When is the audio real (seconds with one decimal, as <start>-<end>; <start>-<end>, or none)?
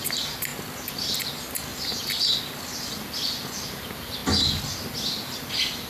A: 0.0-5.9